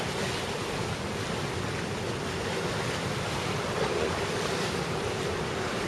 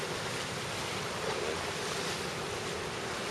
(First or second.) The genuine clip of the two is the second